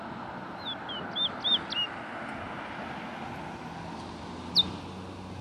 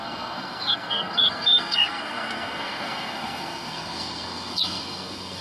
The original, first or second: first